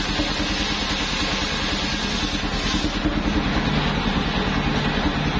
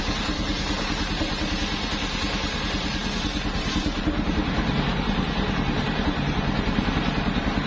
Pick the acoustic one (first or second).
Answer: first